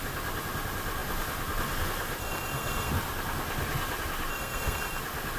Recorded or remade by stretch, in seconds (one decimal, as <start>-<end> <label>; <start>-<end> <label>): 0.0-2.2 recorded; 2.2-2.9 remade; 2.9-4.3 recorded; 4.3-5.0 remade; 5.0-5.4 recorded